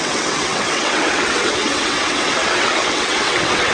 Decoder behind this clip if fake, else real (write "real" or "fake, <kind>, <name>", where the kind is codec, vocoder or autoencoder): fake, vocoder, WaveNeXt